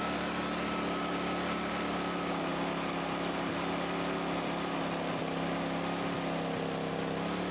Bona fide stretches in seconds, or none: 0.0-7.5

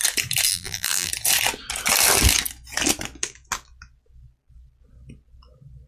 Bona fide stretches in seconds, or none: 0.0-0.5; 1.1-5.9

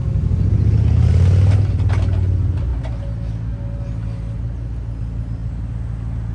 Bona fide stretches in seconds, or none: 0.0-6.3